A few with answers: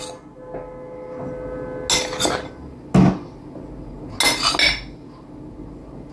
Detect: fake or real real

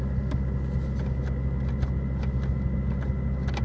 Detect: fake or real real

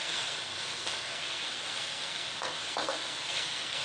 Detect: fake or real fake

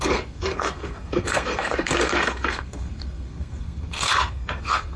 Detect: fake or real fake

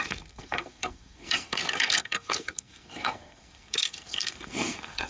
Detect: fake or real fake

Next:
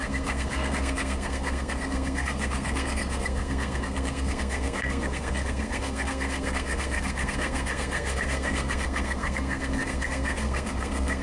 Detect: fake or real fake